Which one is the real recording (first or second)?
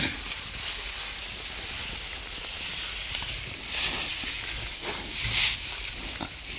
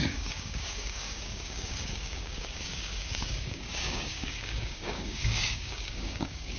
first